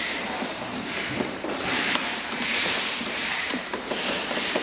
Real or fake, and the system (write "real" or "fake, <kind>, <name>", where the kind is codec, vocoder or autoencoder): fake, vocoder, BigVGAN v2